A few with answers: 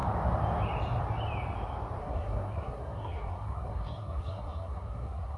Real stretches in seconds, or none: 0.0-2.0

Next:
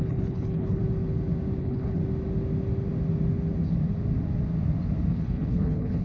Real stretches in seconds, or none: 0.8-1.6; 2.0-5.1